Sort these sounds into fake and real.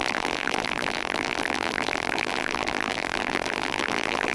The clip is fake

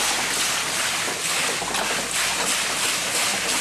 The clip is real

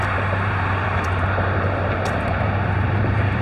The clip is fake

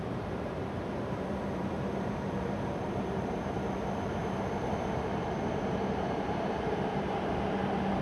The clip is fake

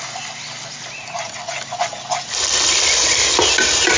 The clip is real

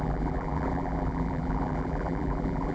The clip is fake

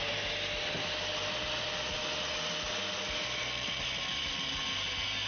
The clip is real